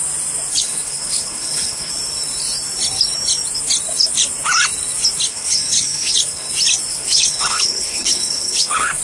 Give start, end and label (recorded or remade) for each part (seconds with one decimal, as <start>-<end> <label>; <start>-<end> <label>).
0.0-0.5 recorded; 0.5-1.9 remade; 1.9-5.3 recorded; 5.3-6.5 remade; 6.5-6.9 recorded; 6.9-9.0 remade